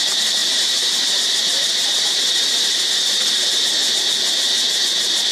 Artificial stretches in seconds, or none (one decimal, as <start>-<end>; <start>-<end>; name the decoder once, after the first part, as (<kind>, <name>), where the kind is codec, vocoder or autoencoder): 0.0-3.8 (vocoder, BigVGAN v2)